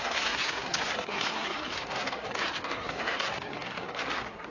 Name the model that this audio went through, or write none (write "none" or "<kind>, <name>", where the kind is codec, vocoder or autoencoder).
codec, SNAC